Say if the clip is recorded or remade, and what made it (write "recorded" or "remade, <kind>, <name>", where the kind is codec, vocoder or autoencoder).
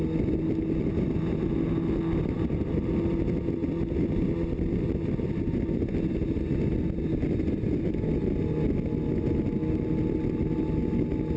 recorded